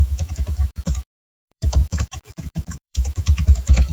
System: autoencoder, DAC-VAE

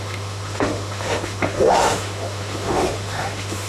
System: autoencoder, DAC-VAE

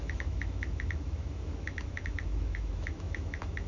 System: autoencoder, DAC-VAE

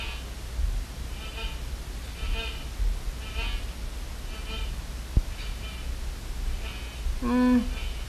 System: none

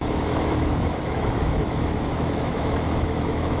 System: autoencoder, DAC-VAE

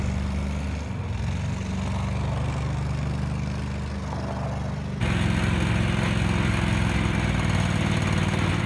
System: none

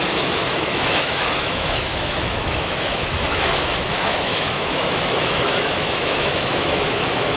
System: autoencoder, DAC-VAE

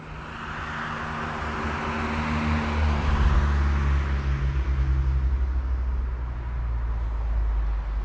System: none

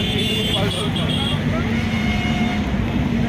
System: none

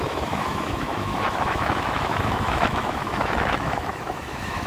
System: autoencoder, DAC-VAE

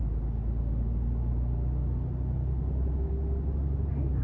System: none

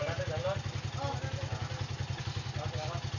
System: none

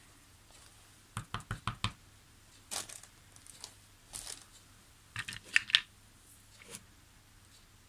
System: none